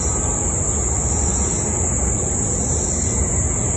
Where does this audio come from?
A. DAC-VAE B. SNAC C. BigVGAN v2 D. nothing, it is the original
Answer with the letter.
D